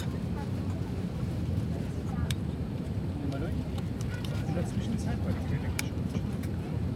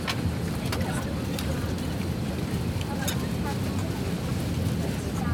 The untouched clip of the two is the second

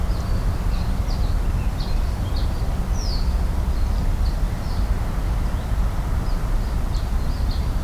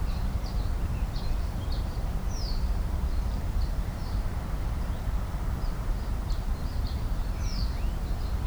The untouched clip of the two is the first